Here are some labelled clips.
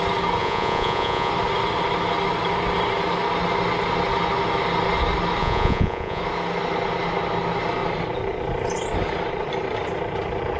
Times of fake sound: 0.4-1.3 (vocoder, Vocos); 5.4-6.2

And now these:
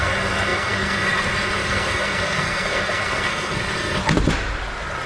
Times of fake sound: 0.0-4.0 (codec, SNAC)